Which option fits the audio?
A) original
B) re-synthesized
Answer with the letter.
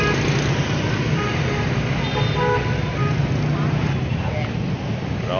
A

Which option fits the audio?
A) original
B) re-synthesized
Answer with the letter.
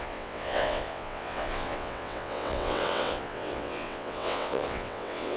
B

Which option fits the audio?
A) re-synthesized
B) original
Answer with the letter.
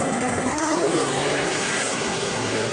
A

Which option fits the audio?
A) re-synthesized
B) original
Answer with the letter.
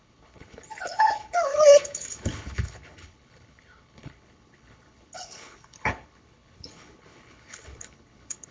A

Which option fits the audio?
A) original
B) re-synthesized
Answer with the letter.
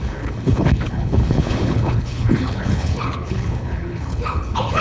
B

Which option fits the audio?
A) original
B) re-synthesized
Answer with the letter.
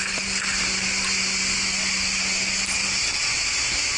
A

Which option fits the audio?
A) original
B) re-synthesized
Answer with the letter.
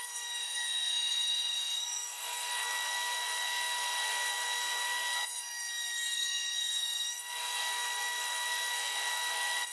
B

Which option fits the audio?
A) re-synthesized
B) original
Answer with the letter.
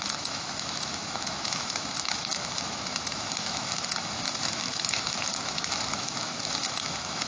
A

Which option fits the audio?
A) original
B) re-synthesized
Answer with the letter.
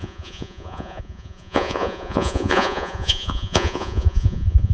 B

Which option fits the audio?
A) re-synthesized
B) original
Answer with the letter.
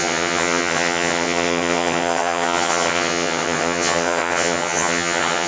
A